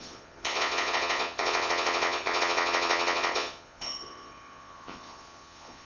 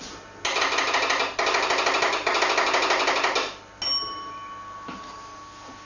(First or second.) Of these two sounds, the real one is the second